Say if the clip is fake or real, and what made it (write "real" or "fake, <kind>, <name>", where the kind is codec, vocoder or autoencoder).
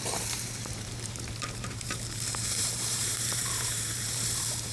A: fake, vocoder, BigVGAN v2